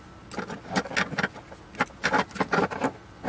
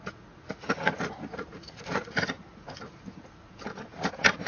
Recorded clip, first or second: first